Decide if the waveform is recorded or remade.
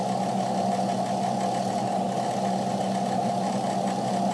recorded